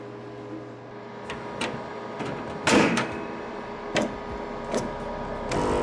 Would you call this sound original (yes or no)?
yes